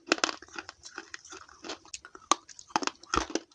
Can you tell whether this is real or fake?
real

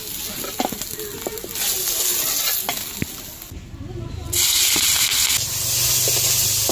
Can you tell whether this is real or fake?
real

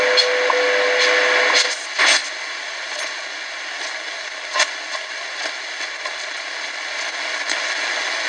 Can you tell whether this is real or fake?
real